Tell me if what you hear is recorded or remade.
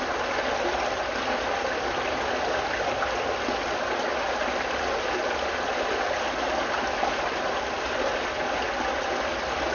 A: recorded